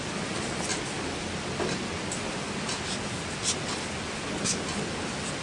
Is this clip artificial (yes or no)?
no